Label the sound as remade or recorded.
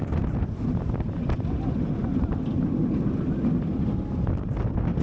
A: recorded